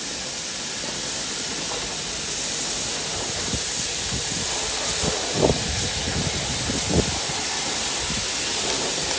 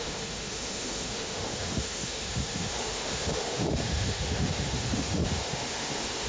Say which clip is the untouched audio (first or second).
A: first